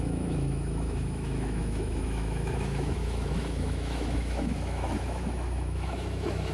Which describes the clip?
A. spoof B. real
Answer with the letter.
A